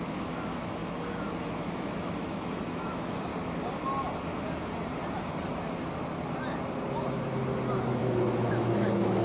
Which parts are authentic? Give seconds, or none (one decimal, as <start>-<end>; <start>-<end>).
3.3-8.0